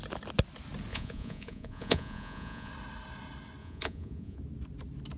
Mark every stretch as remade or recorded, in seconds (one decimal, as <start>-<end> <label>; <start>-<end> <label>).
0.0-0.9 recorded; 0.9-2.7 remade; 2.7-3.6 recorded; 3.6-4.4 remade; 4.4-5.2 recorded